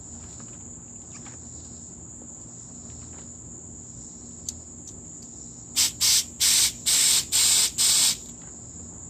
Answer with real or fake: real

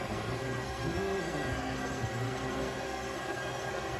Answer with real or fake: fake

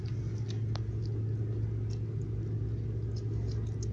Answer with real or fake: real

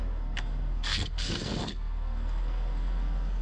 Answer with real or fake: fake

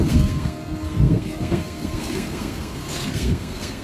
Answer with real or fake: fake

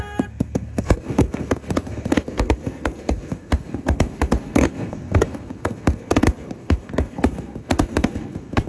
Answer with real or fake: fake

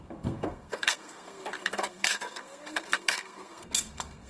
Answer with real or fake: fake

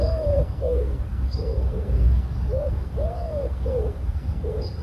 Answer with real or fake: fake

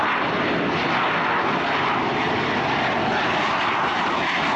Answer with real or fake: real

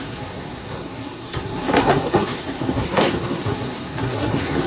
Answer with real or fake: fake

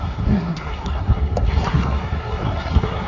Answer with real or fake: fake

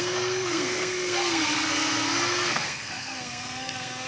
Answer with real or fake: fake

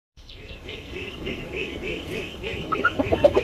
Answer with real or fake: fake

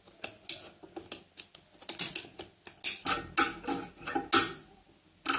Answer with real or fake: real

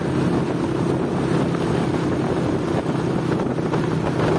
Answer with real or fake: real